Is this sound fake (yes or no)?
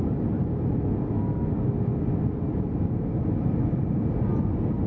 no